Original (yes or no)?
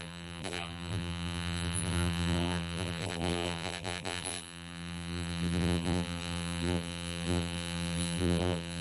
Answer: no